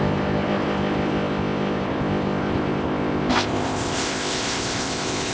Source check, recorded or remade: remade